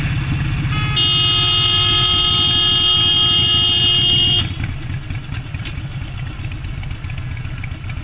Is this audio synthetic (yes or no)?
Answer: no